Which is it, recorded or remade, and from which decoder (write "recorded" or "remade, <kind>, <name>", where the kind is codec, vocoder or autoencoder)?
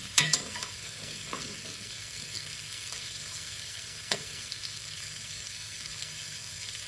remade, codec, SNAC